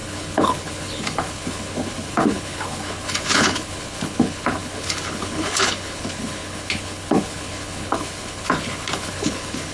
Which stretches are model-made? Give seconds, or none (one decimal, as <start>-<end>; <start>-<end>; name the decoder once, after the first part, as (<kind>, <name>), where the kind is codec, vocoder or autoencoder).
0.0-9.7 (codec, HILCodec)